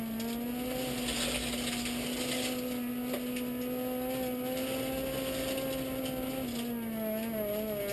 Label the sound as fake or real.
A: real